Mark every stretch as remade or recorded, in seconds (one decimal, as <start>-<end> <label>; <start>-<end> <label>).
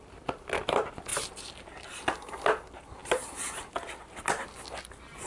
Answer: 0.0-1.1 recorded; 1.1-2.4 remade; 2.4-3.0 recorded; 3.0-3.7 remade; 3.7-5.3 recorded